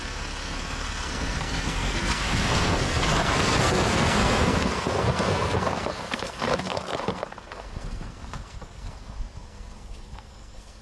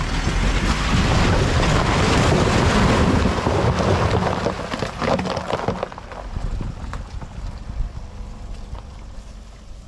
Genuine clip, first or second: second